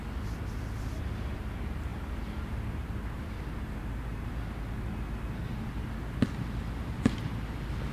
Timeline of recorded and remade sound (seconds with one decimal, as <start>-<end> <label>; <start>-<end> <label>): 0.0-7.9 recorded